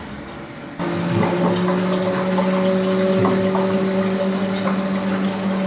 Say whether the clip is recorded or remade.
recorded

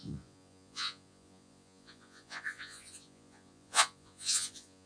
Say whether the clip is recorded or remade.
remade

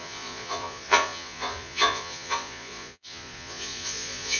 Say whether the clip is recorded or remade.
remade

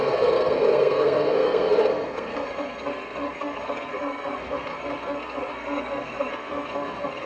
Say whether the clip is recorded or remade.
remade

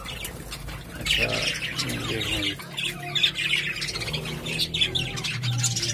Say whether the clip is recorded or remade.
recorded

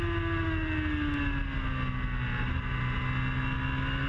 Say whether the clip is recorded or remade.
recorded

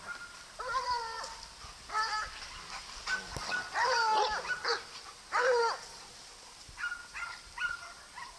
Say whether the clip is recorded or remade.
recorded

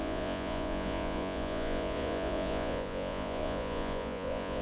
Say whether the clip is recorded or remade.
remade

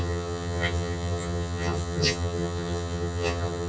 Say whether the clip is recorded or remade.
remade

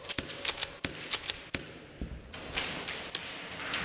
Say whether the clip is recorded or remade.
recorded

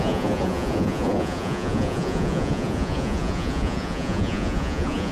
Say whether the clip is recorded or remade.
remade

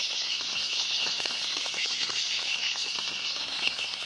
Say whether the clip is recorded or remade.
remade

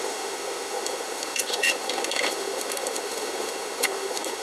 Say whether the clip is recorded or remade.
remade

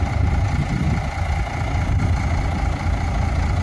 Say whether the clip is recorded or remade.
recorded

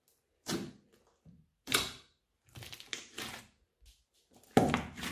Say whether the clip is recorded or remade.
recorded